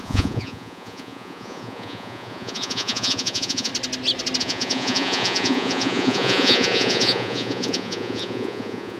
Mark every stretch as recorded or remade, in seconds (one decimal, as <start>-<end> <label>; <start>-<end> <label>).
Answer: 0.0-3.7 remade; 3.7-4.4 recorded; 4.4-9.0 remade